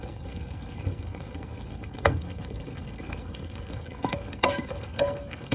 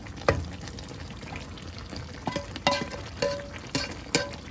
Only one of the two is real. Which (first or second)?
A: second